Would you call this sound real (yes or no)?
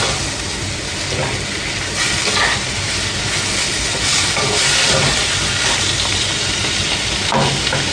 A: yes